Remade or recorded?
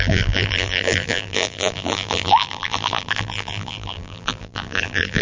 remade